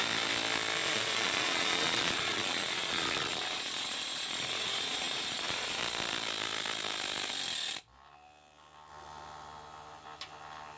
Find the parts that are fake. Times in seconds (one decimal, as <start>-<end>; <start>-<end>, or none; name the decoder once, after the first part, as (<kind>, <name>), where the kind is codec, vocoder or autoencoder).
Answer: 0.8-5.8 (vocoder, Vocos)